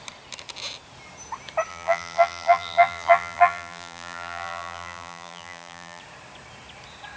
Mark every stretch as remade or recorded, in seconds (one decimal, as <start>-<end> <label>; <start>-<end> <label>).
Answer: 0.0-1.7 recorded; 1.7-6.0 remade; 6.0-7.2 recorded